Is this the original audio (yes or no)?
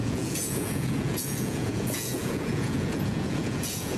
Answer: no